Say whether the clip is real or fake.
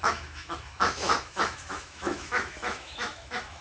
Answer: fake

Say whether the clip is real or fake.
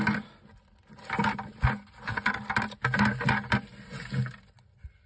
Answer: real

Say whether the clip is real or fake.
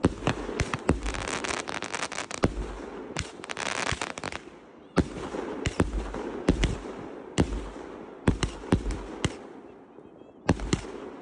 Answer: real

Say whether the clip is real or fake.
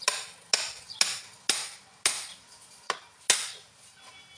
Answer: real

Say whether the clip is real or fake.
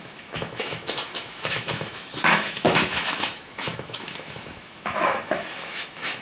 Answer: fake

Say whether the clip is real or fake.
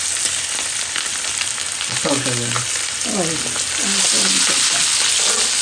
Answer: real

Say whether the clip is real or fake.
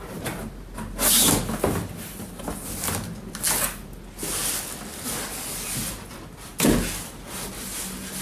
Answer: real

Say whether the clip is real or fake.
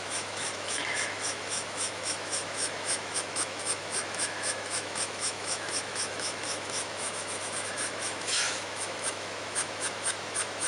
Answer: fake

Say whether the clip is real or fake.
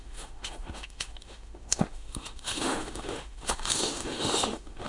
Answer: fake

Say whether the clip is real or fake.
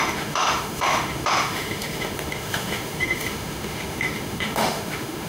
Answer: fake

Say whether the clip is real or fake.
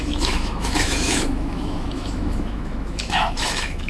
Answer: fake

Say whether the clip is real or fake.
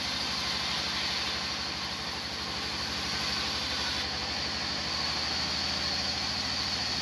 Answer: real